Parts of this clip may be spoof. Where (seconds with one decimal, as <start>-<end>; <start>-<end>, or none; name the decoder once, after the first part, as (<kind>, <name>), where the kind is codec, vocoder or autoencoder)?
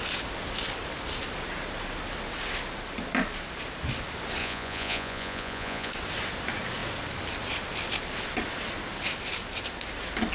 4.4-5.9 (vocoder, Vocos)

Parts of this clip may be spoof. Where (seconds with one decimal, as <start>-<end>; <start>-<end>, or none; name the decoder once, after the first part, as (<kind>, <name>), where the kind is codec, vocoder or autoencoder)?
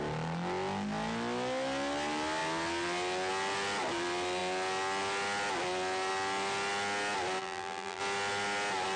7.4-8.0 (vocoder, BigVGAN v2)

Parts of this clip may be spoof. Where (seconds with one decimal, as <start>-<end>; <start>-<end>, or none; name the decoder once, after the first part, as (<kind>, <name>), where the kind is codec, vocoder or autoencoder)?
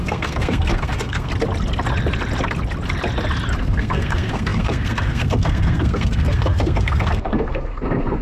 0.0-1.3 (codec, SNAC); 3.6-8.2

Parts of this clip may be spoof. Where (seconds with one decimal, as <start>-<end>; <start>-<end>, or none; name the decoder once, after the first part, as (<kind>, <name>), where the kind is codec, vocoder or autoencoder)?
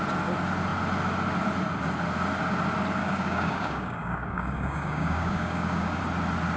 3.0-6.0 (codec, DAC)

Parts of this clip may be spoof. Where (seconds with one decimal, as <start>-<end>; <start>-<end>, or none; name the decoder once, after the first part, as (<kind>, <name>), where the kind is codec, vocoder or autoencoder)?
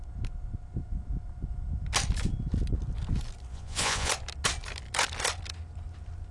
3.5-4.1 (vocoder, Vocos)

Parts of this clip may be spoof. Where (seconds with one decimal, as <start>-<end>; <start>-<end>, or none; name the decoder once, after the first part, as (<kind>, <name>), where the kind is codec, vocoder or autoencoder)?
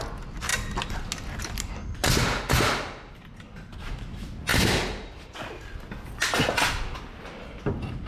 none